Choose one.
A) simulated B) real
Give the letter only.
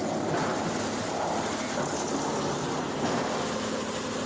B